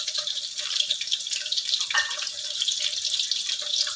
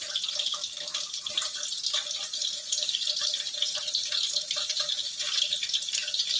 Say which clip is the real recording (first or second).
second